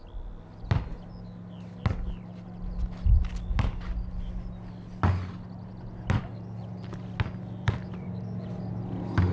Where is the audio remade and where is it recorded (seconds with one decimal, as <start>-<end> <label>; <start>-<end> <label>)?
0.0-9.3 recorded